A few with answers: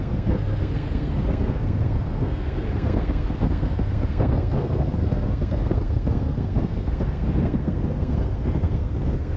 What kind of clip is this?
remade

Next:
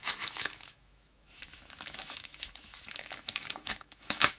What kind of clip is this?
remade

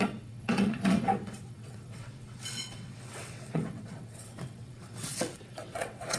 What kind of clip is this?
remade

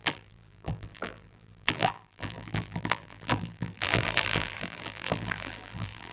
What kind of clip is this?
remade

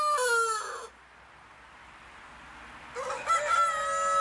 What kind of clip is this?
recorded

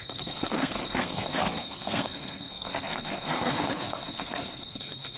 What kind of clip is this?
remade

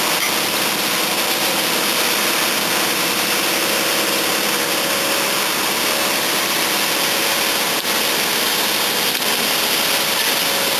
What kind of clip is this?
remade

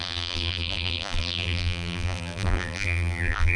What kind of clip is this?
remade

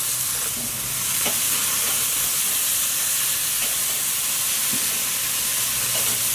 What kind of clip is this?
recorded